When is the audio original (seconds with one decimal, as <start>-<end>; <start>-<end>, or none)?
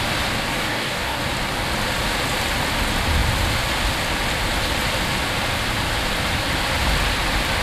0.0-0.5; 1.2-7.6